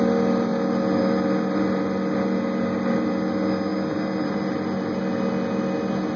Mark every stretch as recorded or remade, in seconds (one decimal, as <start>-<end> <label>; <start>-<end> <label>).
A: 0.0-6.2 recorded